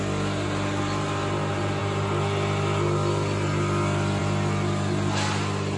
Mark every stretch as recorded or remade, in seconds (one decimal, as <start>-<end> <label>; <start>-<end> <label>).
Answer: 0.0-5.8 recorded